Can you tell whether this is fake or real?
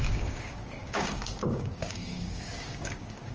fake